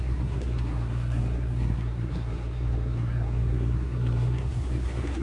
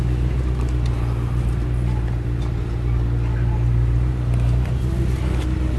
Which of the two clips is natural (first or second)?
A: second